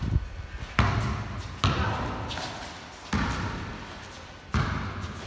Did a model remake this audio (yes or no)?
no